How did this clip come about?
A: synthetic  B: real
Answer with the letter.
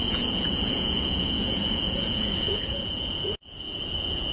A